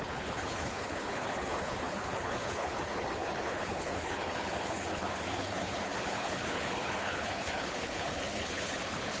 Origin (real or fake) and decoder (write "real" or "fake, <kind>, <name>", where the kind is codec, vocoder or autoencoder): fake, codec, HILCodec